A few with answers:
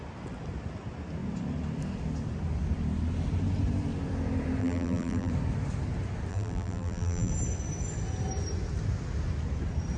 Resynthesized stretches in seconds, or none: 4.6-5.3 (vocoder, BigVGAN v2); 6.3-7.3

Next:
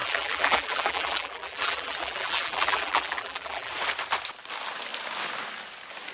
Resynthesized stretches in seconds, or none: 0.0-3.7 (vocoder, BigVGAN v2)

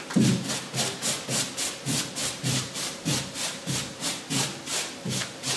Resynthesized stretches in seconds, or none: 2.2-4.2 (vocoder, BigVGAN v2)